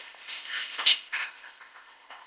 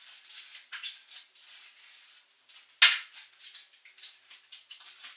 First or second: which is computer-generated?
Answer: first